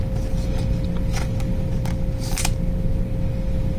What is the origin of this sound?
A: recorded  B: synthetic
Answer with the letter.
A